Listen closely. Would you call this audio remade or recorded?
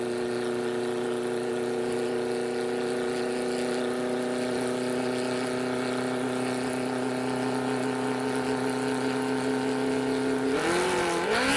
recorded